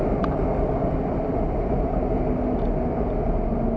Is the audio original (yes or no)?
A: yes